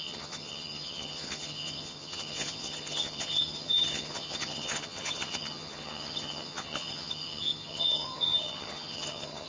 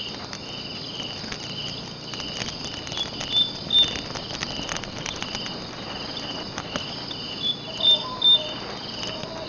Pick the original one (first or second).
second